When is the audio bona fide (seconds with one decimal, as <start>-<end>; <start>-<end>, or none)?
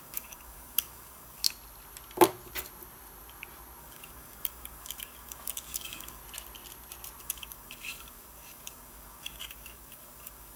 1.4-3.8; 6.2-7.2